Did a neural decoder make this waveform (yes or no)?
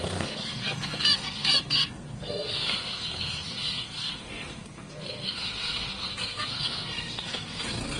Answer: yes